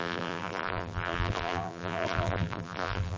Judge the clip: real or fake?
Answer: fake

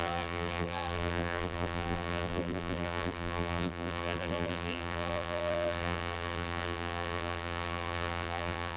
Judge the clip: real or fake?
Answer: fake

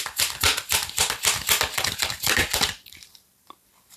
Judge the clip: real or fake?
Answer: fake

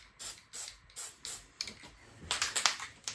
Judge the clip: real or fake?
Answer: real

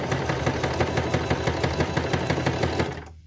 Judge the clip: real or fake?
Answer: real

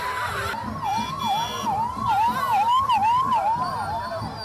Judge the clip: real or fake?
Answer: real